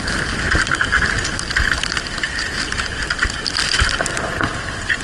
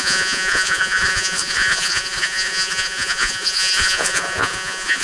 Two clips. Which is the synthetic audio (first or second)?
second